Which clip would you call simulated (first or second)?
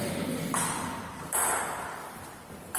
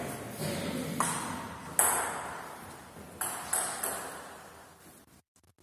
first